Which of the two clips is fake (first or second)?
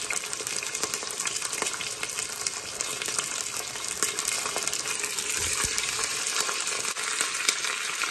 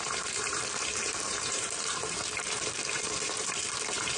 second